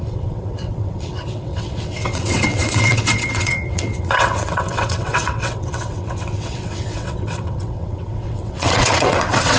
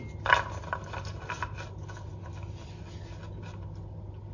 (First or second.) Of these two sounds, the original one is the second